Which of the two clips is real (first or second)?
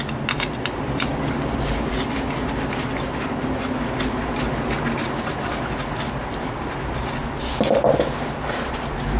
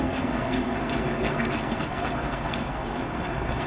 first